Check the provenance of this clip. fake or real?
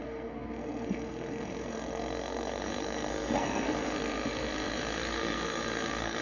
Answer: fake